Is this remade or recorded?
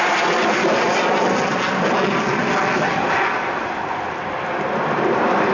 recorded